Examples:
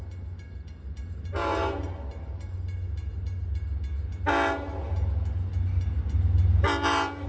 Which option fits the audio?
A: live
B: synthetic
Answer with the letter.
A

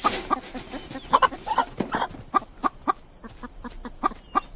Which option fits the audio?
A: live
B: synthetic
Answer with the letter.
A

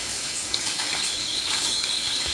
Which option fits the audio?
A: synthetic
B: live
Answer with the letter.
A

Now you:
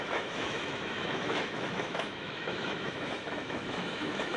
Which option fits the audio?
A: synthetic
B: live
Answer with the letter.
A